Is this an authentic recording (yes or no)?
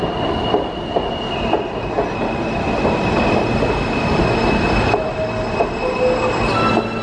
yes